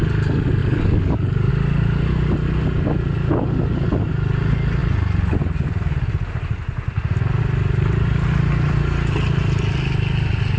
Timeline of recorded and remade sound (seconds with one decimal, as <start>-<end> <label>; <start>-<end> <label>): 0.0-0.6 recorded; 0.6-1.5 remade; 1.5-10.6 recorded